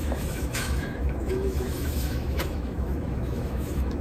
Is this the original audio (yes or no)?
no